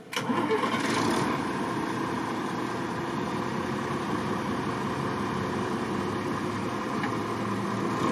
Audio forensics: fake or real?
real